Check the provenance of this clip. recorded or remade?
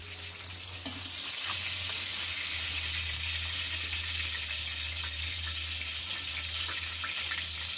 recorded